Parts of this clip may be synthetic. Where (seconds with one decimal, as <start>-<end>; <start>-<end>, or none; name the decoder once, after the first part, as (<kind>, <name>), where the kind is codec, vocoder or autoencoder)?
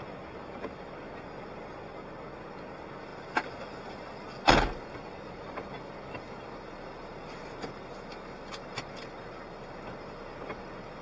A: none